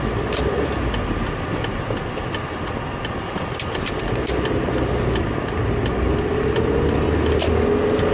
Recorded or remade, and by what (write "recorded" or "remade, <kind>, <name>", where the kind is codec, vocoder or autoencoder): recorded